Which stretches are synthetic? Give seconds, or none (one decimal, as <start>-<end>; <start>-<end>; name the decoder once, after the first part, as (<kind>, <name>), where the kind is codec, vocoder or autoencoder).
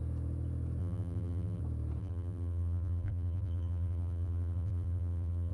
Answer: 0.8-1.6 (vocoder, BigVGAN v2); 2.0-5.5